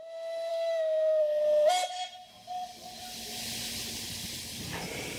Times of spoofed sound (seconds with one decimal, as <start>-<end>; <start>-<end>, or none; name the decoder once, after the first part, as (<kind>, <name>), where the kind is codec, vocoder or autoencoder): 0.5-1.2 (codec, SNAC)